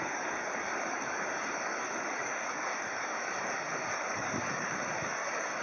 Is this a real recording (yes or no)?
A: no